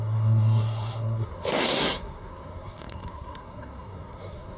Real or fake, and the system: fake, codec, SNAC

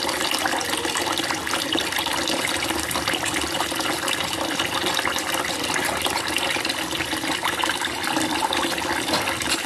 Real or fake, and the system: real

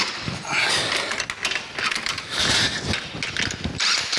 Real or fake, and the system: real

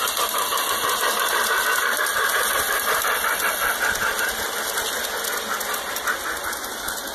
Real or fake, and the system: real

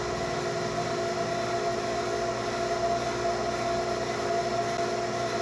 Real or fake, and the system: real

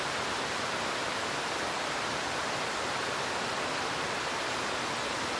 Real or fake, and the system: real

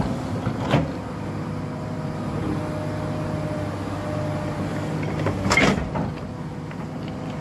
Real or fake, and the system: real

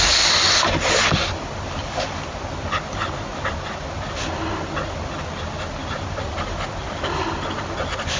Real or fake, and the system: real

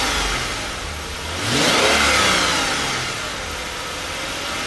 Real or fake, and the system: real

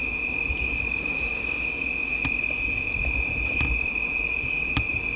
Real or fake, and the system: real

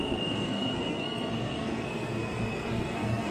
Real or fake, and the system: fake, codec, SNAC